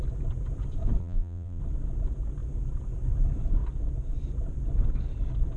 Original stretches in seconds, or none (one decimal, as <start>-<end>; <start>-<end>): 0.0-1.0; 1.6-5.6